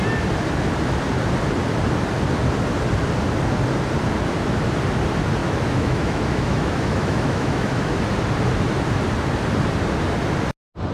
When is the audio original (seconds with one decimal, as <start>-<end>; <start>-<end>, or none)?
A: 0.0-5.4; 8.0-10.9